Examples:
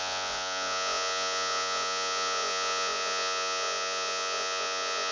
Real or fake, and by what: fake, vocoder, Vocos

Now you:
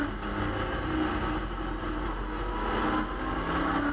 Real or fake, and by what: real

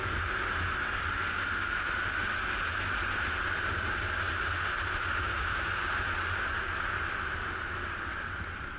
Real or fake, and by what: real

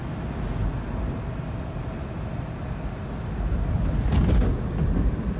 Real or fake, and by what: real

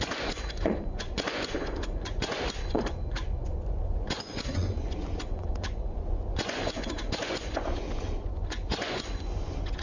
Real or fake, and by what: fake, vocoder, Vocos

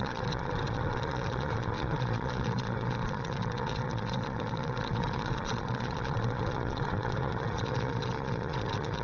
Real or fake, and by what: fake, vocoder, Vocos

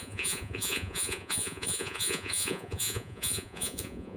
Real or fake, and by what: fake, vocoder, Vocos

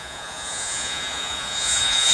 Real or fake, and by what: fake, vocoder, Vocos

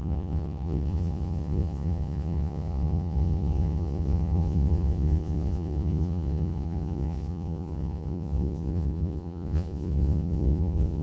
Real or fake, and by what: fake, vocoder, Vocos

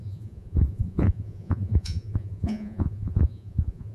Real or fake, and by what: fake, vocoder, Vocos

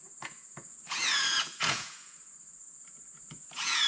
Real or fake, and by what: fake, vocoder, Vocos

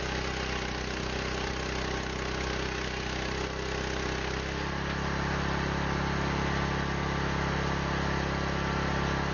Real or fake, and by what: real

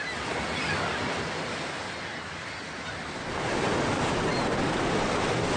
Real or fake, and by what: real